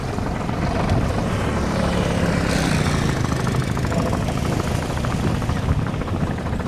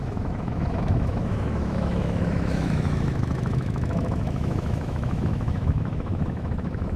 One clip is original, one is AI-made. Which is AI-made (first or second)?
second